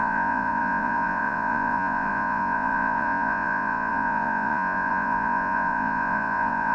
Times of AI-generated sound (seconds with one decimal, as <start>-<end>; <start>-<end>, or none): 0.0-6.7